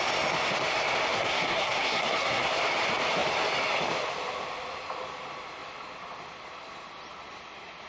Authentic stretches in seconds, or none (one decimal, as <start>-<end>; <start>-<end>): 0.0-1.1; 2.5-7.9